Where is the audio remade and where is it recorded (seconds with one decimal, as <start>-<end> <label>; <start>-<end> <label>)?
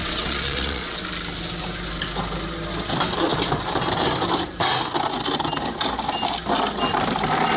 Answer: 0.0-1.0 remade; 1.0-7.6 recorded